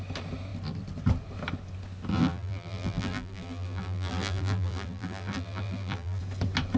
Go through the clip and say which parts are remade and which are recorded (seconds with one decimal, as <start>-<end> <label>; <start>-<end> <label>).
0.0-2.1 recorded; 2.1-6.2 remade; 6.2-6.8 recorded